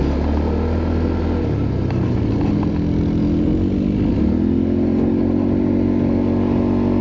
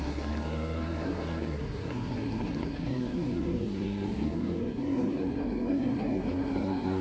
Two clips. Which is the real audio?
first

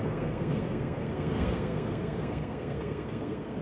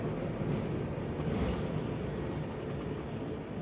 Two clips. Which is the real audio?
second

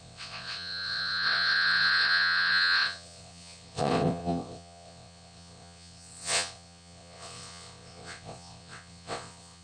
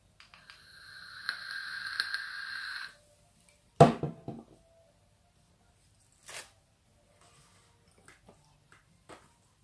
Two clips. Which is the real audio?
second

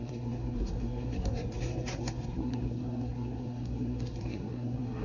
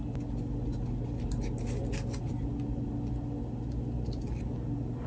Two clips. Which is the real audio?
second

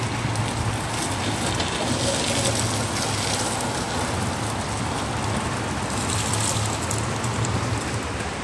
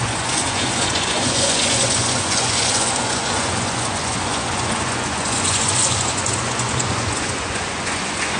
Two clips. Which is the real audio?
first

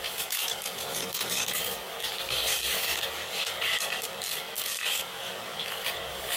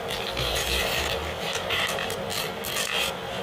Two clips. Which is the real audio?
second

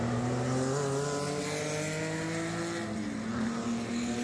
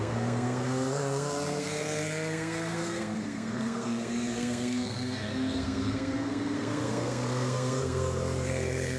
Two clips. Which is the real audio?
first